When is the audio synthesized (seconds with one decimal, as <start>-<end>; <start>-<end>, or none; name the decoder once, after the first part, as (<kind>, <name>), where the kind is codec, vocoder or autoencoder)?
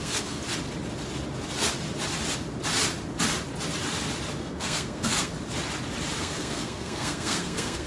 0.0-0.4 (codec, SNAC); 4.4-5.3; 6.2-7.9